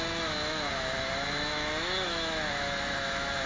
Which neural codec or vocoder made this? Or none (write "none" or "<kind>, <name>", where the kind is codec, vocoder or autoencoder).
autoencoder, DAC-VAE